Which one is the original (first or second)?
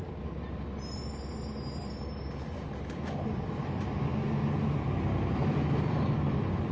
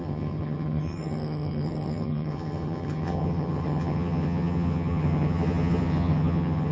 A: first